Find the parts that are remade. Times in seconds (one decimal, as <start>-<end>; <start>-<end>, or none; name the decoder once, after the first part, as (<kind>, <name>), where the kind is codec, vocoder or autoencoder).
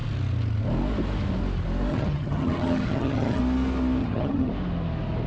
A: 1.9-3.4 (vocoder, HiFi-GAN); 4.0-4.5